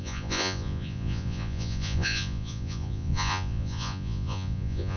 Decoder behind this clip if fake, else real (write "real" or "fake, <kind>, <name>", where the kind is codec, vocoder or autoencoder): fake, vocoder, Vocos